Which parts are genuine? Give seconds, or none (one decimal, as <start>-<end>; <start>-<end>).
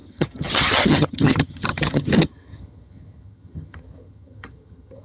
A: none